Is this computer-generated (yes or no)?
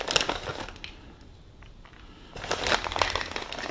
no